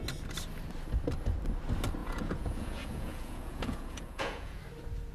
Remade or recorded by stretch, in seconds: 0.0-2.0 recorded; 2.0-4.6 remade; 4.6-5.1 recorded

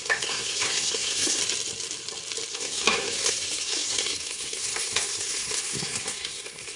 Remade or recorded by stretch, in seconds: 0.0-1.4 remade; 1.4-2.5 recorded; 2.5-6.8 remade

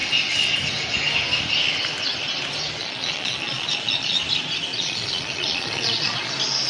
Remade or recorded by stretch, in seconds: 0.0-2.8 recorded; 2.8-4.2 remade; 4.2-4.7 recorded; 4.7-6.3 remade; 6.3-6.7 recorded

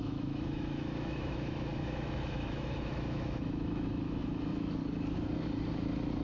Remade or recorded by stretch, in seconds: 0.0-4.8 remade; 4.8-6.2 recorded

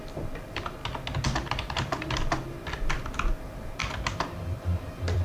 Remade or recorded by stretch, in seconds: 0.0-0.8 remade; 0.8-1.5 recorded; 1.5-3.8 remade; 3.8-4.4 recorded; 4.4-5.2 remade

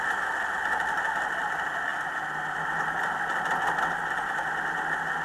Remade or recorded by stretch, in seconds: 0.0-5.2 recorded

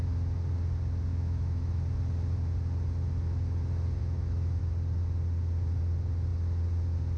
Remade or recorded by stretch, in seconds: 0.0-1.1 recorded; 1.1-1.8 remade; 1.8-4.0 recorded; 4.0-4.6 remade; 4.6-7.2 recorded